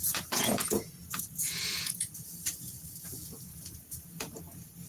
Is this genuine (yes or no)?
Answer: no